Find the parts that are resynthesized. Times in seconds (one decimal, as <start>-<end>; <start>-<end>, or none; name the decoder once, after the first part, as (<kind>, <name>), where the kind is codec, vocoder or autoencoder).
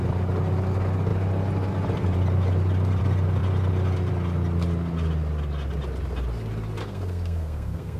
6.8-8.0 (codec, SNAC)